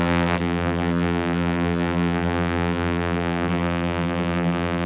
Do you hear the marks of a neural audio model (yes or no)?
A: yes